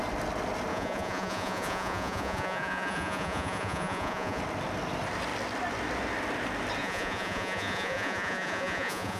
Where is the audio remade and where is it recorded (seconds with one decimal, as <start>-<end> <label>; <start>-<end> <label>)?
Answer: 0.0-0.7 recorded; 0.7-4.4 remade; 4.4-6.8 recorded; 6.8-9.2 remade